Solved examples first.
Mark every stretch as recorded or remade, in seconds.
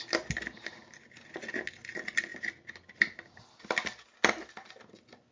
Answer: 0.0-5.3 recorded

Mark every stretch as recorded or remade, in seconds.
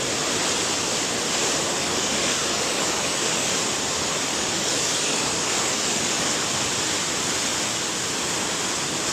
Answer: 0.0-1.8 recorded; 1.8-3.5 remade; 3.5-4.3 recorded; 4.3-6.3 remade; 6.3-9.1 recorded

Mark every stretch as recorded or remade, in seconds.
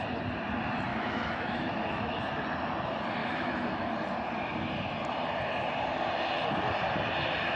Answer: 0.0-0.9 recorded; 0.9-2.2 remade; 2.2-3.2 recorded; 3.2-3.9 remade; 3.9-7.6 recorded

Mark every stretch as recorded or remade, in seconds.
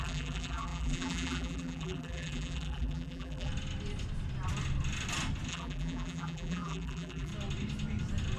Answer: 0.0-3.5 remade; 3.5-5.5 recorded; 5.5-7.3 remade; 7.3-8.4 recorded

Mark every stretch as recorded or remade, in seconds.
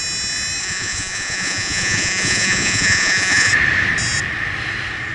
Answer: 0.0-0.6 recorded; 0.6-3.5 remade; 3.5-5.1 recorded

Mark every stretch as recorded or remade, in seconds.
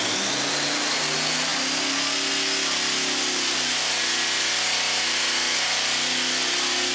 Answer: 0.0-6.9 recorded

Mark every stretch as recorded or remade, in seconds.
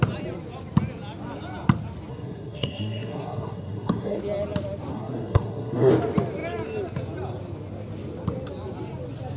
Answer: 0.0-2.1 recorded; 2.1-4.2 remade; 4.2-4.9 recorded; 4.9-5.9 remade; 5.9-9.4 recorded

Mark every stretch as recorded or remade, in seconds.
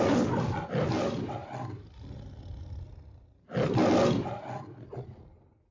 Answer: 0.0-5.7 recorded